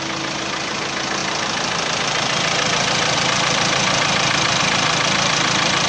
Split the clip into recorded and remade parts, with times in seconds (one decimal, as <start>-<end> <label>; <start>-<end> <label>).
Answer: 0.0-5.9 recorded